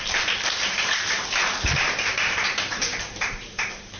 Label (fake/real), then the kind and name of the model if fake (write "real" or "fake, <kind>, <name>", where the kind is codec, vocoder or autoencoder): fake, vocoder, BigVGAN v2